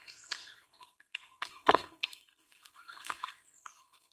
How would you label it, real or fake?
fake